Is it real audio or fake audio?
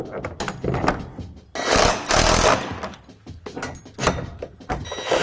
real